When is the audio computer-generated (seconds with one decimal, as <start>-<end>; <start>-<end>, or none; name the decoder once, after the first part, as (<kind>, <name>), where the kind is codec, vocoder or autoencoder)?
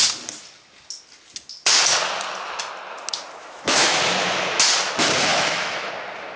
3.4-4.0 (autoencoder, DAC-VAE); 5.3-5.9